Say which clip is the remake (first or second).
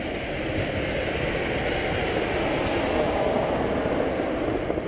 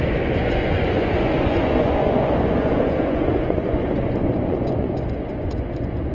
second